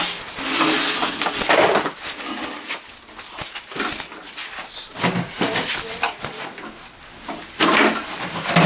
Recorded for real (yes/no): yes